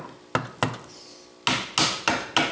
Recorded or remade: recorded